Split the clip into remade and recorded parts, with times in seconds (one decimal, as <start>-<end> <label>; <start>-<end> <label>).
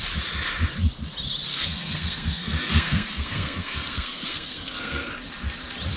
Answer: 0.0-1.5 recorded; 1.5-5.1 remade; 5.1-6.0 recorded